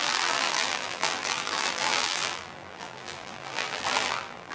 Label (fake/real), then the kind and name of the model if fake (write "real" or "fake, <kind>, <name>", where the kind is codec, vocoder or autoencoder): fake, vocoder, BigVGAN v2